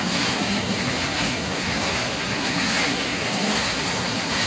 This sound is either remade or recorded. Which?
remade